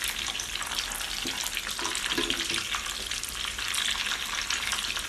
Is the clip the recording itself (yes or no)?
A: yes